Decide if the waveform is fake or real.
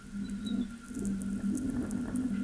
real